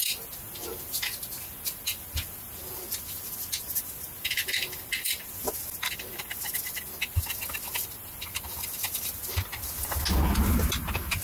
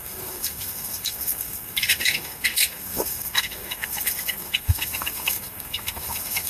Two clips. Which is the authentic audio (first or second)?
first